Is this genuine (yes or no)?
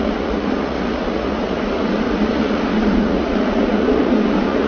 no